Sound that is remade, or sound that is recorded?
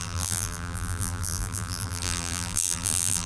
remade